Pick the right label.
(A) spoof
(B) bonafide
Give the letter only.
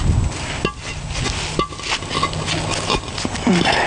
B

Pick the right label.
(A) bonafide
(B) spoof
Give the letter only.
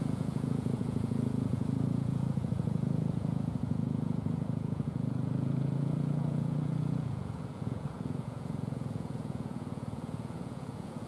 B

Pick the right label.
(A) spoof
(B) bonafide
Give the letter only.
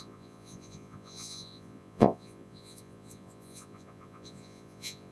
A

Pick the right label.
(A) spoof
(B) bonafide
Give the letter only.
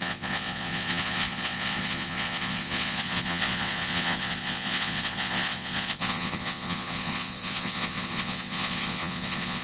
A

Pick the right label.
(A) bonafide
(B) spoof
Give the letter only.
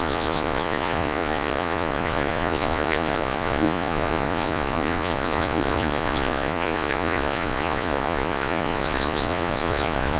B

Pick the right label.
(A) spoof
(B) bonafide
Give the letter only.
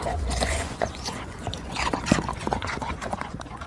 A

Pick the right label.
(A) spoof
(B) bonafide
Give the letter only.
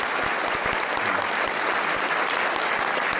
B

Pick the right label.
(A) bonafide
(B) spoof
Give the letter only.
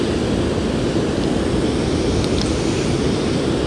A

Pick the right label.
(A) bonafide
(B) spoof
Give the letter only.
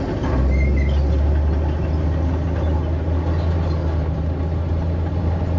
A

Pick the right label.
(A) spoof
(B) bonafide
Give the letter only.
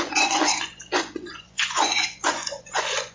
A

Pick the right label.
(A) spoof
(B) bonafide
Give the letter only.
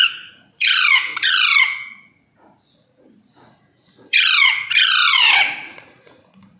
A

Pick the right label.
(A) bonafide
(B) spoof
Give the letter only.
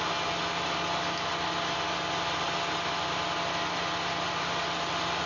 A